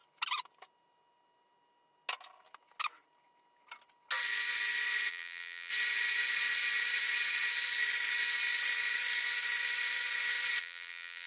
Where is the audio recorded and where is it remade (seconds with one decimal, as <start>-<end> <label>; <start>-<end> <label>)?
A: 0.0-5.1 recorded; 5.1-5.7 remade; 5.7-10.6 recorded; 10.6-11.3 remade